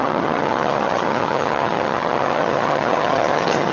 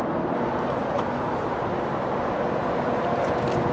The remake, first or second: first